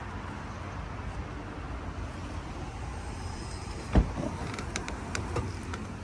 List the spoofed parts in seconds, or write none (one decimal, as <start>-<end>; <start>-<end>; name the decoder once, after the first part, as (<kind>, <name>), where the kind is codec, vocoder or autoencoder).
2.2-5.2 (vocoder, BigVGAN v2)